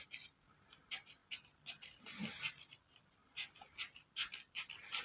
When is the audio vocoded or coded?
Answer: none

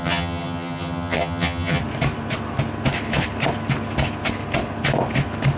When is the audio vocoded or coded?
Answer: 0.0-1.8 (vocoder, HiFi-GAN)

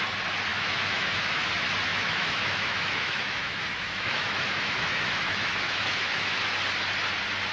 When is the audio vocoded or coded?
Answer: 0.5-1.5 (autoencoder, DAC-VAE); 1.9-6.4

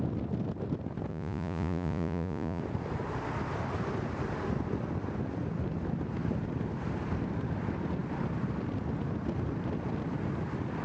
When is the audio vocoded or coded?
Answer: 1.1-2.6 (vocoder, Vocos)

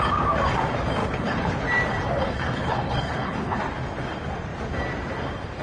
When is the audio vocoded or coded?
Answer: 1.0-1.5 (codec, HILCodec); 2.2-3.6